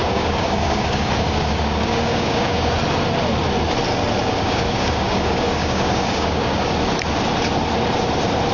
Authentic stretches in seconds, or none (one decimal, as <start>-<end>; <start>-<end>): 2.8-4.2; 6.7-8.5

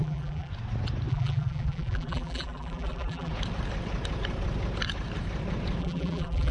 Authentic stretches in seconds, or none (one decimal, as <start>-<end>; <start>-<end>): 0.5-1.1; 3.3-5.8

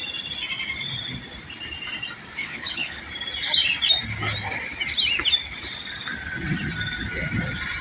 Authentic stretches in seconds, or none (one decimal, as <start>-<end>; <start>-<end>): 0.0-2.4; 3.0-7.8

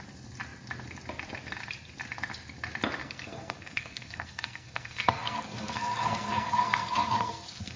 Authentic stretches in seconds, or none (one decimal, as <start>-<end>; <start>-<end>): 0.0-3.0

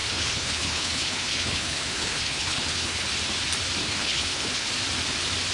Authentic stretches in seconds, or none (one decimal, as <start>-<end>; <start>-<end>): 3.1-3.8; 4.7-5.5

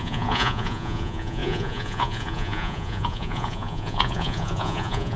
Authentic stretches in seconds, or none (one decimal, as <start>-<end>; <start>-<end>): none